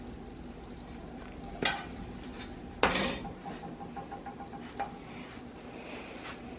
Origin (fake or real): real